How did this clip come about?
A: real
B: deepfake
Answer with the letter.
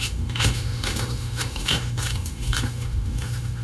B